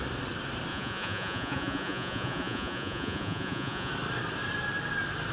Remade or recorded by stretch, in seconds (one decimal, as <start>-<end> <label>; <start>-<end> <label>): 0.0-0.7 recorded; 0.7-3.9 remade; 3.9-5.3 recorded